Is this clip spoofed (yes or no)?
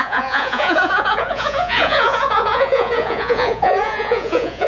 yes